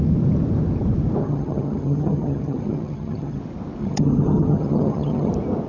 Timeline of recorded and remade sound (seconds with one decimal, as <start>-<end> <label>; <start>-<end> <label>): 0.0-1.2 recorded; 1.2-3.4 remade; 3.4-3.8 recorded; 3.8-5.3 remade; 5.3-5.7 recorded